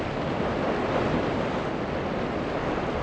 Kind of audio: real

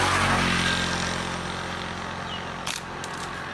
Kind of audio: real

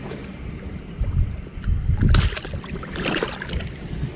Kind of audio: real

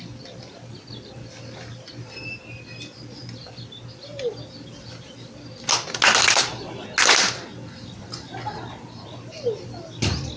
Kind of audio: real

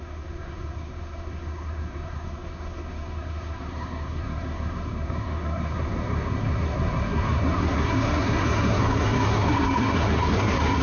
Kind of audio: fake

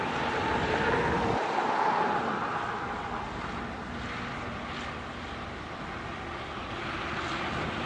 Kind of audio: real